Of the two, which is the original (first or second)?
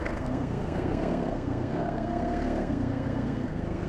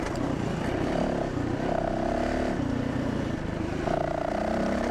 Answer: second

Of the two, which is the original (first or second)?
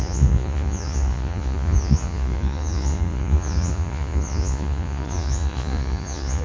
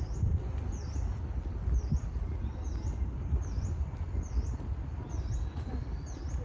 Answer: second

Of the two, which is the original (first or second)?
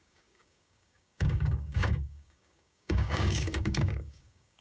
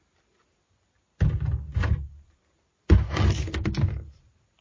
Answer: second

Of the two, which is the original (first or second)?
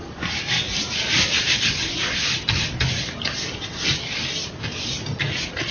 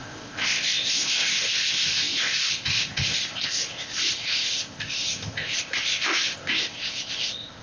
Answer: first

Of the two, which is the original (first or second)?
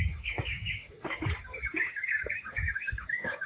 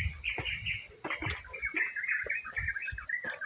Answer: second